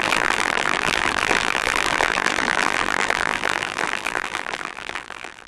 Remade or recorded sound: remade